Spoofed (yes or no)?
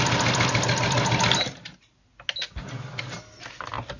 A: no